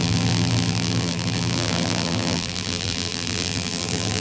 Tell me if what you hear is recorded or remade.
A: remade